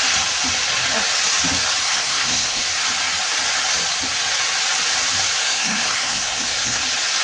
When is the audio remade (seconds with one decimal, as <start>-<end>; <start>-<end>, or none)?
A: 1.8-2.6; 5.4-6.8